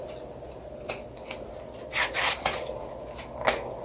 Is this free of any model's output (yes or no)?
yes